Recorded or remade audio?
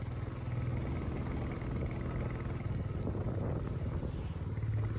recorded